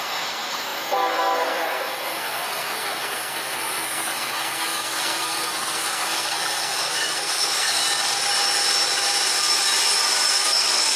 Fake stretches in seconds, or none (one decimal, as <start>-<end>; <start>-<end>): 0.0-7.8; 10.3-11.0